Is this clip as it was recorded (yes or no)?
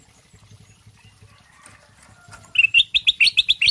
yes